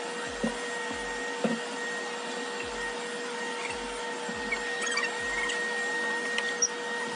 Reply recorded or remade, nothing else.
recorded